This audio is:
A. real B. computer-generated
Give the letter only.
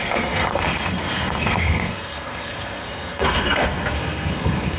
B